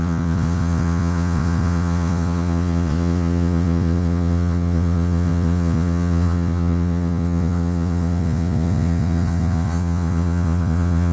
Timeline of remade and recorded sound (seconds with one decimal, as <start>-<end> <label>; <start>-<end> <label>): 0.0-11.1 remade